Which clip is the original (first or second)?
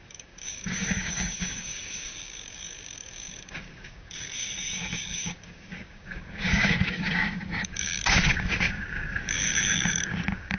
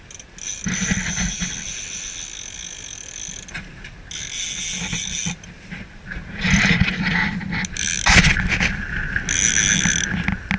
second